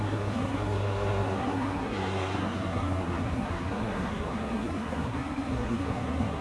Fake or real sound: fake